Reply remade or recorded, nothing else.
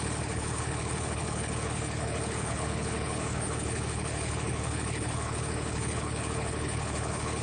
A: remade